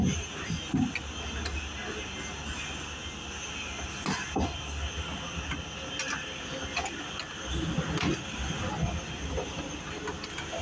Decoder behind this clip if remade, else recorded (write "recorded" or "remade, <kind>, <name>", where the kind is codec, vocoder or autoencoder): recorded